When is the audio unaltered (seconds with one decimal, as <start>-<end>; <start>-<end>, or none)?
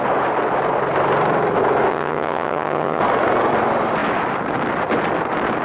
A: 0.0-1.9; 3.0-5.6